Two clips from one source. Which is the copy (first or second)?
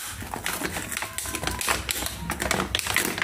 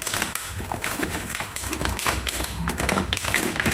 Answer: second